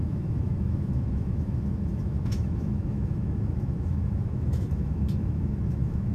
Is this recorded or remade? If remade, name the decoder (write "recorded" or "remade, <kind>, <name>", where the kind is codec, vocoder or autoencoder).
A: remade, autoencoder, DAC-VAE